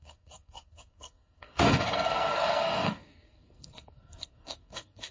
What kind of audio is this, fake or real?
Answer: fake